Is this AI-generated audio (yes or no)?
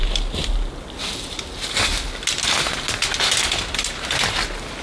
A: no